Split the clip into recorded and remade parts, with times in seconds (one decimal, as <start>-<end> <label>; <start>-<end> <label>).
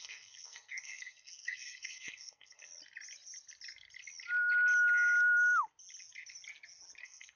0.0-2.7 remade; 2.7-7.0 recorded; 7.0-7.4 remade